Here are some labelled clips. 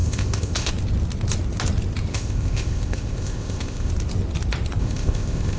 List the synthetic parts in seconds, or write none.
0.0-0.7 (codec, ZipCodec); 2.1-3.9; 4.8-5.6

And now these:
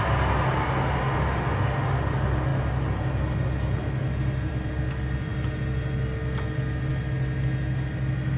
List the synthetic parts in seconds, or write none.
1.0-2.0 (autoencoder, DAC-VAE)

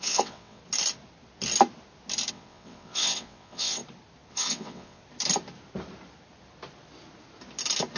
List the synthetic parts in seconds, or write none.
0.0-0.6 (vocoder, WaveNeXt); 2.3-3.8; 4.3-5.0

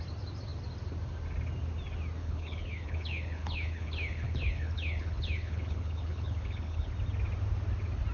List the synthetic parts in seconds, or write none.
2.2-6.9 (codec, HILCodec)

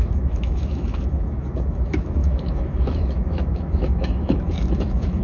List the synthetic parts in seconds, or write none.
0.0-5.2 (autoencoder, DAC-VAE)

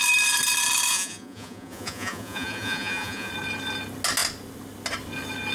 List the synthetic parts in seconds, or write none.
0.9-3.3 (vocoder, Vocos)